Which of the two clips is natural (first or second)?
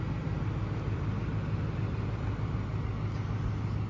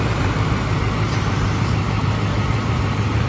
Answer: first